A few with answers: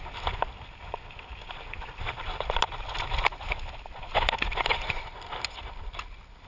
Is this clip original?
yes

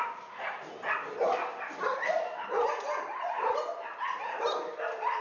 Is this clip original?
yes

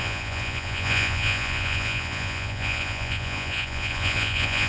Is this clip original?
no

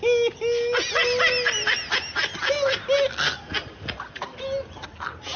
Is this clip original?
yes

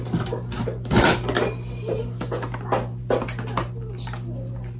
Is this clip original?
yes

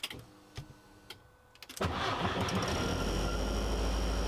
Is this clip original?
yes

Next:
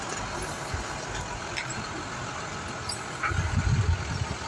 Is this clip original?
yes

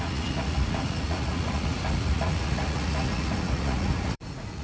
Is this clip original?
no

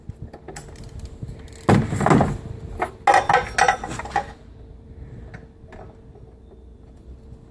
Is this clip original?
yes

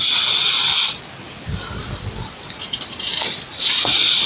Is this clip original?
yes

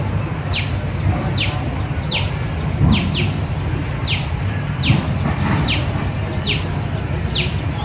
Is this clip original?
yes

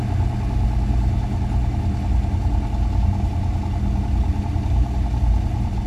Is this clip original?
yes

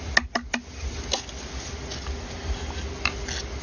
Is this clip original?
yes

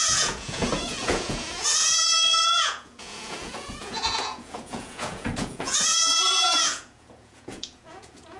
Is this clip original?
no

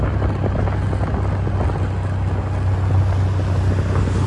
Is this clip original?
yes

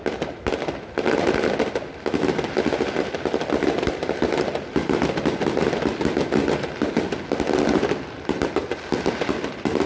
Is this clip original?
yes